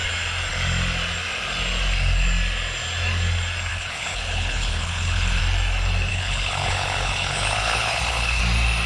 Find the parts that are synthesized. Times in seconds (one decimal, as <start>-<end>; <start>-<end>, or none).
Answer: 3.7-5.4; 6.1-8.4